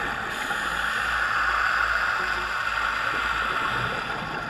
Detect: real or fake real